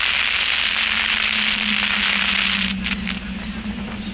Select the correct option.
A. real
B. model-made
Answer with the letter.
A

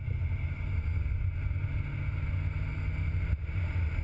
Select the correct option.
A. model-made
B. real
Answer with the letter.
B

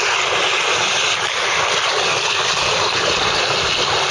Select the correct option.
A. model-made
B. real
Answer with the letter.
B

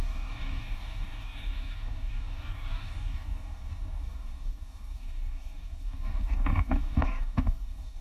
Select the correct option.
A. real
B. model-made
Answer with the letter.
B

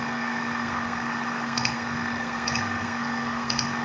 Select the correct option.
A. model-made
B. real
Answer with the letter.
A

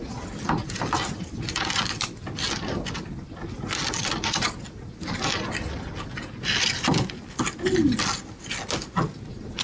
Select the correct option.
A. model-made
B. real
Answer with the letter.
B